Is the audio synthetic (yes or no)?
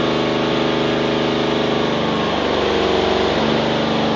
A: no